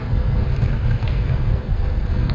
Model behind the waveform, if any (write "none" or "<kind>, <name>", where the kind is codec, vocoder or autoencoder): codec, SNAC